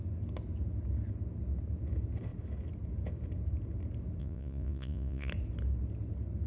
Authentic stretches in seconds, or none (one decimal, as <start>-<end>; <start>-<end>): 0.0-4.2; 5.3-6.5